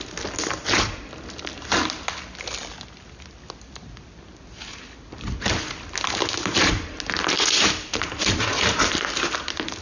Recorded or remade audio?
recorded